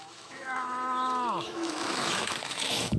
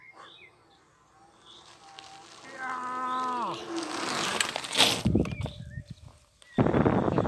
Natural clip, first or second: second